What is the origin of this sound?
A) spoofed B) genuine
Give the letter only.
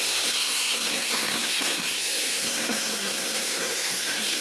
A